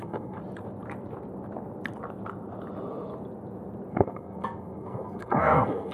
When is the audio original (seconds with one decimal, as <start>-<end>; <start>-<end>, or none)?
0.4-3.9